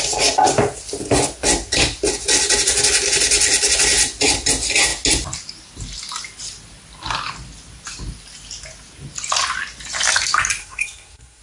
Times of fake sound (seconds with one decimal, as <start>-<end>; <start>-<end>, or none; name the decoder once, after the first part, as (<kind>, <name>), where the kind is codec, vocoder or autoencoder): 10.6-11.4 (codec, SNAC)